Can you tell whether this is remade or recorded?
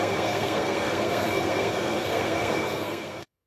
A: remade